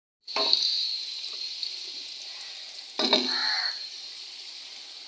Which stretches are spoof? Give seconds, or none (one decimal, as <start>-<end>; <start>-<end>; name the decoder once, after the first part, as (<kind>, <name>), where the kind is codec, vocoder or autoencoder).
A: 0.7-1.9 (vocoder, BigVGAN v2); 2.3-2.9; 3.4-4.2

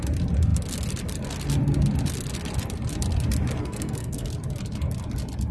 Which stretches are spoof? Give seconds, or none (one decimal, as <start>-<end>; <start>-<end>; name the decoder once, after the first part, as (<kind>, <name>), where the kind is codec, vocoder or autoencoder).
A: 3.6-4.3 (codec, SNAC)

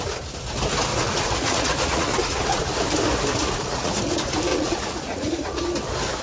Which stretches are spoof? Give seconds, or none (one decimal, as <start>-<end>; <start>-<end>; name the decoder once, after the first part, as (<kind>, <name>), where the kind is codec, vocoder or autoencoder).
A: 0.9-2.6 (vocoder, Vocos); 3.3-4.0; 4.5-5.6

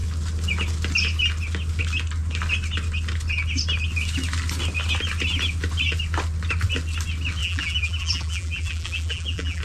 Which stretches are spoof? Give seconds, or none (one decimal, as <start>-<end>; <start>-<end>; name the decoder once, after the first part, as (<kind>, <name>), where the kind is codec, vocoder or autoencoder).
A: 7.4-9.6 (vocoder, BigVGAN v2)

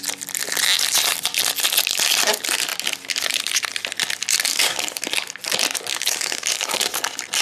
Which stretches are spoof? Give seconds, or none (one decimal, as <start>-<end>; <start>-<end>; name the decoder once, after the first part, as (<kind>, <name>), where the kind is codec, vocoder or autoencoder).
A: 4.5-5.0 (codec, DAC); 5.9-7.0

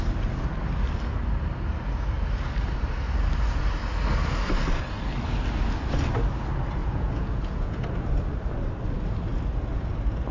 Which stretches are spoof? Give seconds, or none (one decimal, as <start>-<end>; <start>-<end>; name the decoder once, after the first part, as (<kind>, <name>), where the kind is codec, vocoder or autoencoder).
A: 6.8-7.8 (vocoder, Vocos)